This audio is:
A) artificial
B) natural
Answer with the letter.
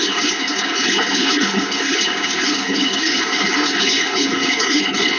A